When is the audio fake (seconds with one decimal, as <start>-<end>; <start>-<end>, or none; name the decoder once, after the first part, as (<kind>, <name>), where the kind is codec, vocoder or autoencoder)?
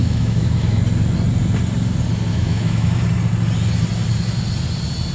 0.0-0.8 (autoencoder, DAC-VAE); 2.3-3.0